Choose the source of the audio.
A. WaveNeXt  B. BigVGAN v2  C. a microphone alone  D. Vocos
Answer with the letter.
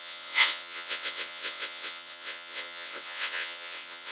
A